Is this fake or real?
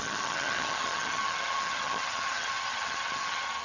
fake